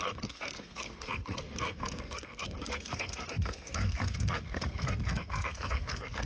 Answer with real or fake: fake